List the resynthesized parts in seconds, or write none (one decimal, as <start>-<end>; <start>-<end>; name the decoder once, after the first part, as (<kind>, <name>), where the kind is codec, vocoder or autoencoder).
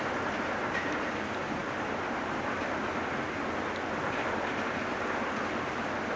none